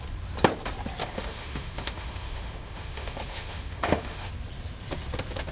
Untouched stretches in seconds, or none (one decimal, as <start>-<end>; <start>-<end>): 0.0-1.0; 4.3-5.5